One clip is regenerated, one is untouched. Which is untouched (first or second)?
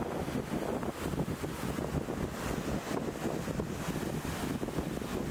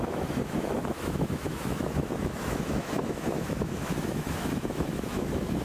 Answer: first